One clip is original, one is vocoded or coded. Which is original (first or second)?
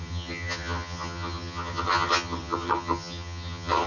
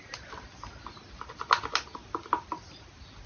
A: second